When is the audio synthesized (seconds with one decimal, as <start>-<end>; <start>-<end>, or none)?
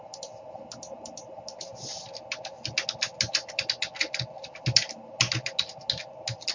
none